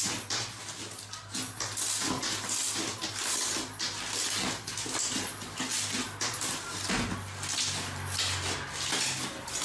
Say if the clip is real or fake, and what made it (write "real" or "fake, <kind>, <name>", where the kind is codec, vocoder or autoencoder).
real